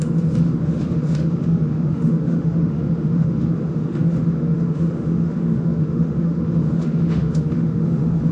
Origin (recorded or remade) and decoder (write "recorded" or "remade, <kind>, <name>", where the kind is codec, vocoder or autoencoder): remade, autoencoder, DAC-VAE